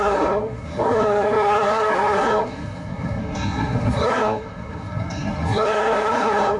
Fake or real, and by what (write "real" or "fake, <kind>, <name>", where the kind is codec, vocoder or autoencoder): fake, codec, SNAC